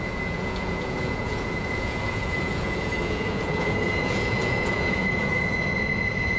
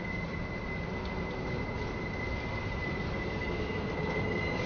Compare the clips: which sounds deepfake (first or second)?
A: first